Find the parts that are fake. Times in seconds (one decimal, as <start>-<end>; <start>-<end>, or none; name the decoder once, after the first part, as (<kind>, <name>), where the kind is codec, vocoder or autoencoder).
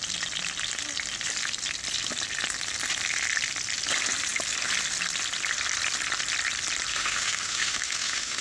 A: 6.9-8.4 (autoencoder, DAC-VAE)